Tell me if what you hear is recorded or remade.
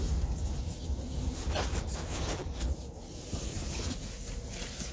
recorded